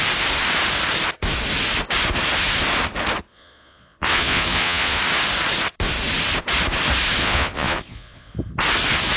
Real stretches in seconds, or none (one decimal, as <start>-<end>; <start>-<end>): 0.0-3.3; 5.0-7.2; 8.3-9.2